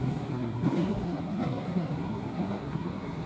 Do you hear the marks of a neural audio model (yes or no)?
yes